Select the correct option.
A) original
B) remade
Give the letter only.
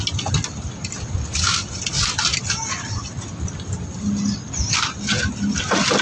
A